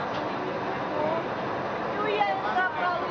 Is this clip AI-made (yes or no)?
no